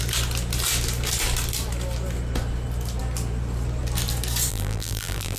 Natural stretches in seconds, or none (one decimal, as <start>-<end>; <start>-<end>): 0.0-4.5